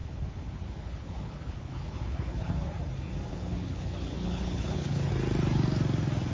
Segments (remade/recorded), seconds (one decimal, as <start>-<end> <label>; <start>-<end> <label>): 0.0-2.8 remade; 2.8-3.3 recorded; 3.3-5.1 remade; 5.1-6.3 recorded